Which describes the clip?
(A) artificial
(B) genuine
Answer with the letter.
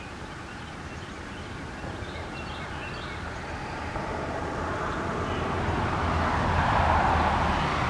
B